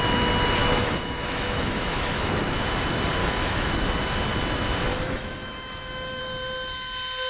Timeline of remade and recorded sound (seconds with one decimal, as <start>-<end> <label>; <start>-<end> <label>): 0.0-0.6 recorded; 0.6-2.3 remade; 2.3-3.2 recorded; 3.2-3.7 remade; 3.7-4.9 recorded; 4.9-6.2 remade; 6.2-7.3 recorded